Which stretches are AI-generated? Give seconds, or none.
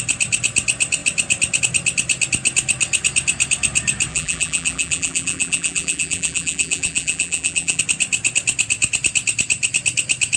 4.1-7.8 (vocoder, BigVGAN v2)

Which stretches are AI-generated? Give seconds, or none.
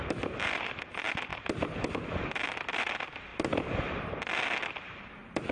none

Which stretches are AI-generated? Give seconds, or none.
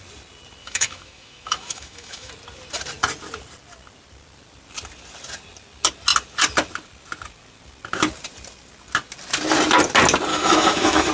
0.6-2.3 (autoencoder, DAC-VAE); 10.3-11.1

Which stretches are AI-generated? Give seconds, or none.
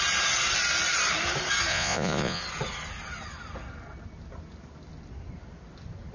1.7-2.4 (vocoder, Vocos)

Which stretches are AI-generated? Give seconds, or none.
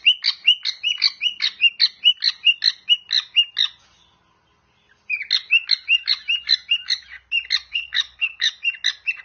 7.7-8.5 (codec, HILCodec)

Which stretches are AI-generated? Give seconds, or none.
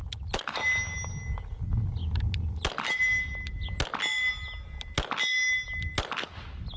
none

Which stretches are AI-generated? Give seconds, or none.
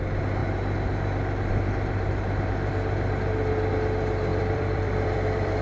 4.3-5.6 (vocoder, BigVGAN v2)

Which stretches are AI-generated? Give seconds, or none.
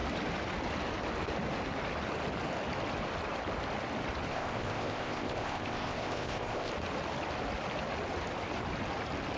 4.3-6.7 (codec, ZipCodec)